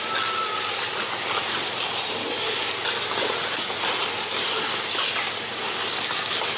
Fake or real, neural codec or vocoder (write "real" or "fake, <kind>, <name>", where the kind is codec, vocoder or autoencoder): real